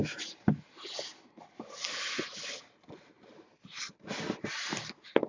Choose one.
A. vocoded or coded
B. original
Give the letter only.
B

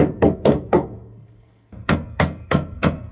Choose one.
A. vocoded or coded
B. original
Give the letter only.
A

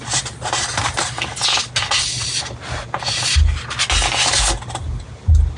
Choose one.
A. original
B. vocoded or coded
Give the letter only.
A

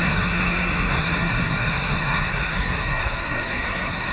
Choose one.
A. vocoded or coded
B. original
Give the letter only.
A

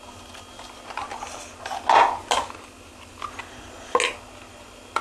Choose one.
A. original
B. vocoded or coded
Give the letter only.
A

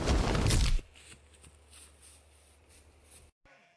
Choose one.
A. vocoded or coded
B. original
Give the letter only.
B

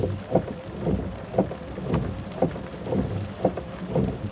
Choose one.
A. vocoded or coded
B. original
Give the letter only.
B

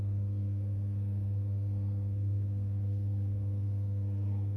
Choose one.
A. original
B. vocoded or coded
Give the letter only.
B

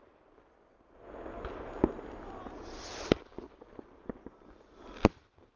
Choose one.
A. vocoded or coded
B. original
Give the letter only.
B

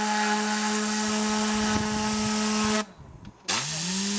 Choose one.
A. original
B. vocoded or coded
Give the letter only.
A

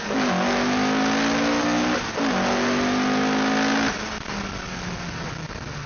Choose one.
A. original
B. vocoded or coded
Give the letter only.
A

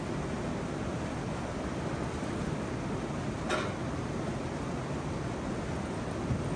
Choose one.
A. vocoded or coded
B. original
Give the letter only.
B